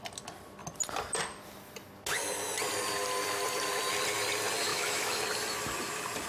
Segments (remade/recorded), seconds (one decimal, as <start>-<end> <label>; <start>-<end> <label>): 0.0-4.7 recorded; 4.7-5.2 remade; 5.2-6.3 recorded